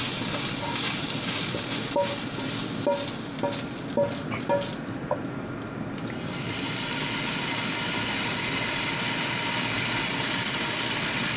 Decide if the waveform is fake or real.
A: real